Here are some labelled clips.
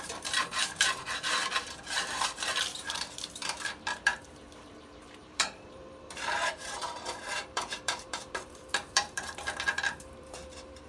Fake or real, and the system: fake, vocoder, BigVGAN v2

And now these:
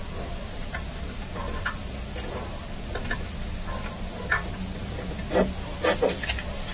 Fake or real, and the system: real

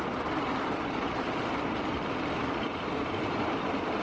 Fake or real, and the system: real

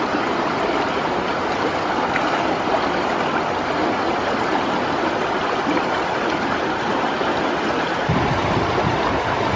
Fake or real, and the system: fake, vocoder, BigVGAN v2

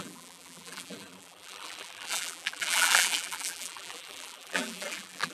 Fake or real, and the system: fake, vocoder, BigVGAN v2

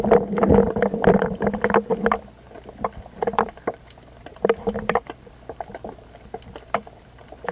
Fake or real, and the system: fake, vocoder, BigVGAN v2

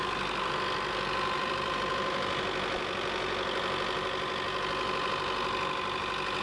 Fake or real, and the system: real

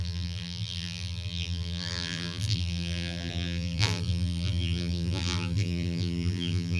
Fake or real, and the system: fake, vocoder, BigVGAN v2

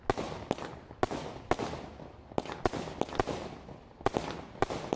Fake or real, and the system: real